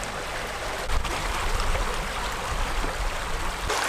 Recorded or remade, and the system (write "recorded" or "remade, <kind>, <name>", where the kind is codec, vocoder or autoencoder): recorded